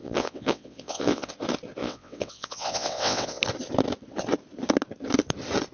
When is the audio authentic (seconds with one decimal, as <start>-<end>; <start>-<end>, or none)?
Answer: 1.3-1.8; 3.4-5.7